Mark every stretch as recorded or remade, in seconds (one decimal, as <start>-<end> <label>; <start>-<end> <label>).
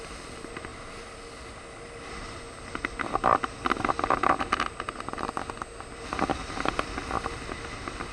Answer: 0.0-8.1 recorded